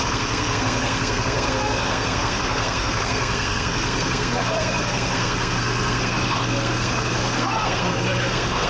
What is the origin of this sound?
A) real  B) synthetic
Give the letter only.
B